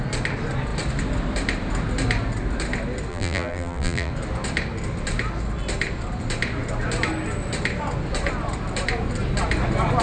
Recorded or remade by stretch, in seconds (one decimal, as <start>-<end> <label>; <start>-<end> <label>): 0.0-3.1 recorded; 3.1-4.1 remade; 4.1-10.0 recorded